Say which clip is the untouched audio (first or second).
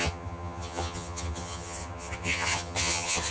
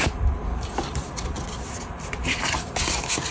second